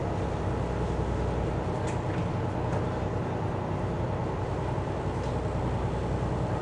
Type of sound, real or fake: real